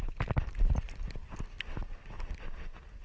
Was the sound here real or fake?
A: real